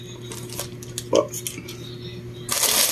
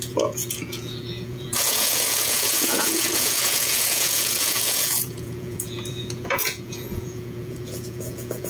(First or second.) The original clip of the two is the first